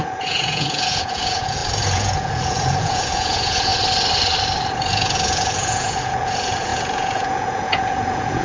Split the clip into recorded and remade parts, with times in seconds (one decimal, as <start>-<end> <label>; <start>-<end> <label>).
0.0-3.7 remade; 3.7-4.9 recorded; 4.9-8.4 remade